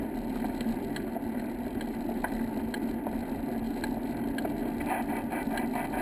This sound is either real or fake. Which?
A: real